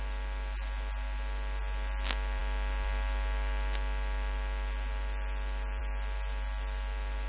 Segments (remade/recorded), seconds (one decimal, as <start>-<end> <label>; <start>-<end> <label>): 0.0-7.3 recorded